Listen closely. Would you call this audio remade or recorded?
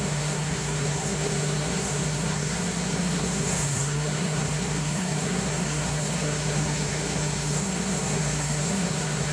remade